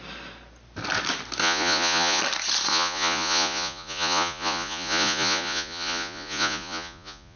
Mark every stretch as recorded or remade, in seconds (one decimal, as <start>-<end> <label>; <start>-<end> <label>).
0.0-1.4 recorded; 1.4-2.2 remade; 2.2-2.7 recorded; 2.7-7.4 remade